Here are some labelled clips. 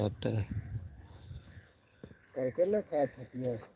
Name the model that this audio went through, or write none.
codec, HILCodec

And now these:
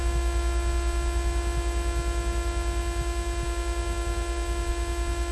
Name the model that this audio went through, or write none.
none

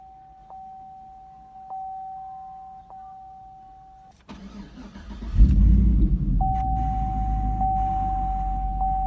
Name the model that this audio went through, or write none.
none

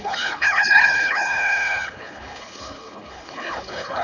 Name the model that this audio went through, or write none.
codec, HILCodec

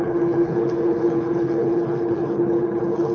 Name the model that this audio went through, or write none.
codec, HILCodec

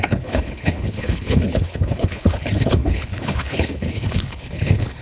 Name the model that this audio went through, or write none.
codec, HILCodec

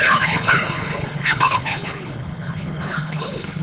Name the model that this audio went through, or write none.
codec, HILCodec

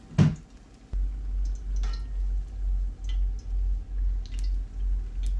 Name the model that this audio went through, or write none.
none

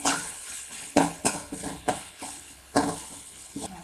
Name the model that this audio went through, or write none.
codec, HILCodec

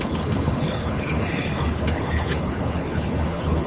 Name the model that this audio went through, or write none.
codec, HILCodec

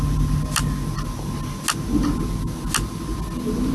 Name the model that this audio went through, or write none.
none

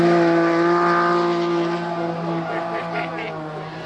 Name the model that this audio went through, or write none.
none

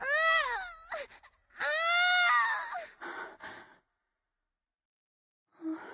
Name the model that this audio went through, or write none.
none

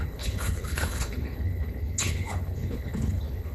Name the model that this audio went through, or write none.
codec, HILCodec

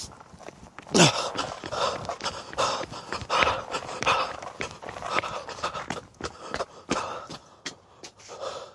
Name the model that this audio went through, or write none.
none